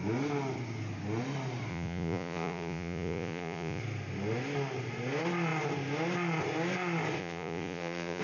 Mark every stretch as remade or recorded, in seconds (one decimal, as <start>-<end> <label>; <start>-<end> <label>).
0.0-1.7 recorded; 1.7-3.8 remade; 3.8-7.2 recorded; 7.2-8.2 remade